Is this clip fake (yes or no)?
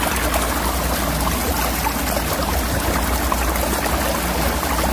no